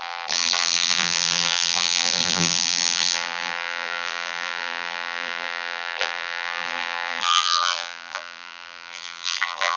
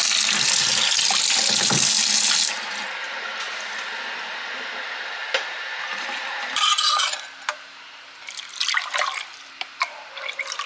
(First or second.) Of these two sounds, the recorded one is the second